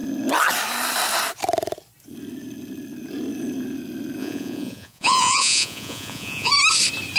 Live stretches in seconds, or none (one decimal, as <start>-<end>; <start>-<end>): 0.0-4.2; 6.5-7.2

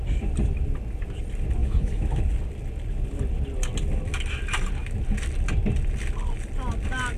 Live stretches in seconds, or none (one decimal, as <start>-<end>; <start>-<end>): 0.0-1.6; 2.2-7.2

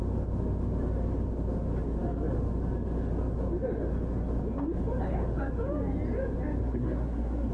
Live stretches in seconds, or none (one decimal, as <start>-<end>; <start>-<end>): 0.0-6.6

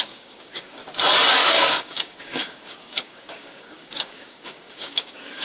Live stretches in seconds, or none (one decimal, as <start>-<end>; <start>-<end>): 0.8-1.3

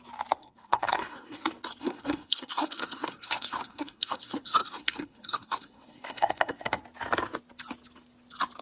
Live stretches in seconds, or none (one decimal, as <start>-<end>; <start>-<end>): 0.0-0.4; 1.4-1.8; 6.8-8.6

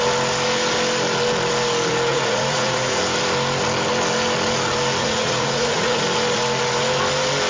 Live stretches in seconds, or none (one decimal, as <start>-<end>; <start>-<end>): 0.0-2.1; 3.0-5.0; 6.0-7.5

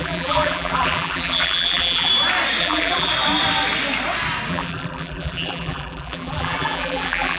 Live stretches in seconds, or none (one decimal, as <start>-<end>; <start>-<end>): 2.1-2.6; 3.1-4.5